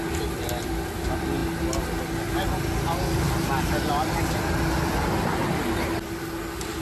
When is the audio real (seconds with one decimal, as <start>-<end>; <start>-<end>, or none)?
0.0-6.8